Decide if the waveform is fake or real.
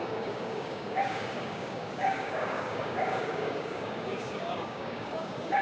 fake